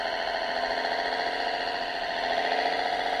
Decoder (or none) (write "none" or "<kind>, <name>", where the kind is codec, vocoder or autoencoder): none